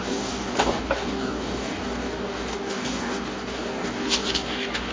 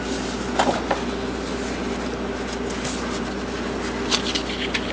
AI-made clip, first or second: first